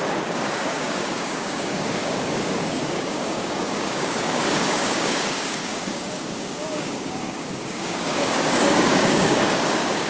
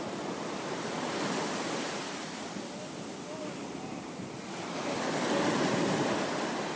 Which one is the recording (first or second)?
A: second